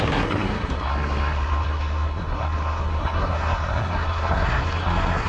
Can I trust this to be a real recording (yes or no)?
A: no